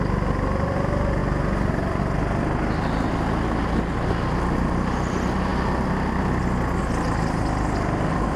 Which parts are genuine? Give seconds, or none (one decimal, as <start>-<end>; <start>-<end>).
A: 0.0-8.4